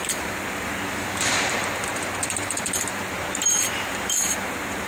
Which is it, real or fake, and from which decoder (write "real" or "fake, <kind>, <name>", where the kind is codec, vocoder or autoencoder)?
fake, vocoder, BigVGAN v2